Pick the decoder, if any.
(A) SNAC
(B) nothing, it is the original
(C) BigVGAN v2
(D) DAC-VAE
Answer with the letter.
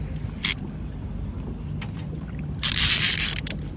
C